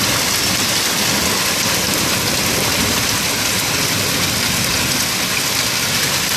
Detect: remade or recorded remade